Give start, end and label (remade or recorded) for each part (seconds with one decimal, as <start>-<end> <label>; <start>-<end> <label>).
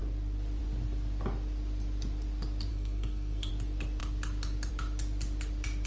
0.0-2.7 recorded; 2.7-3.5 remade; 3.5-5.9 recorded